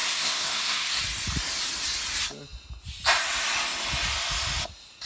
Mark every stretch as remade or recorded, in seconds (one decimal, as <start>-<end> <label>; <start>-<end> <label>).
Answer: 0.0-1.0 remade; 1.0-5.1 recorded